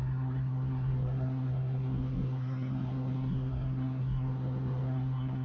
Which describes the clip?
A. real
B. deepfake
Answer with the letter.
B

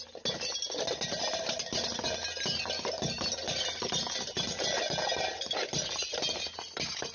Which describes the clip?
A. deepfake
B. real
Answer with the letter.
B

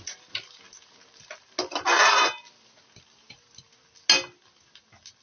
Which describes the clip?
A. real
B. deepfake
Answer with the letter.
A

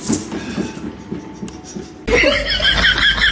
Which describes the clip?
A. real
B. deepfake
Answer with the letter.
A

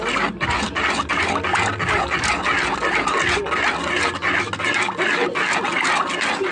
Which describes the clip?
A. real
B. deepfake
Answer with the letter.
A